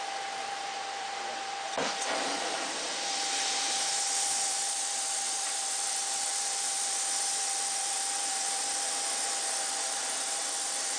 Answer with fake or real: fake